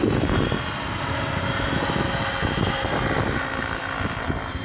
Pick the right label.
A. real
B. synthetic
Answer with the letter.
A